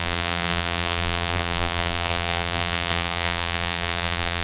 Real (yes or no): no